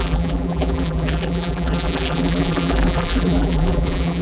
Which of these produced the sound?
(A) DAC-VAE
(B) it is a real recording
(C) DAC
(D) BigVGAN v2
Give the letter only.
D